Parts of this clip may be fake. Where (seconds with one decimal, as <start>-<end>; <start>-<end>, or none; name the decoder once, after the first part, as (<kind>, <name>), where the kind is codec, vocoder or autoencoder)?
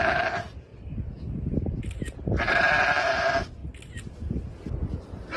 0.0-0.7 (vocoder, BigVGAN v2); 1.6-3.6; 4.8-5.4